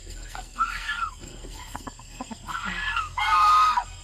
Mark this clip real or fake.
fake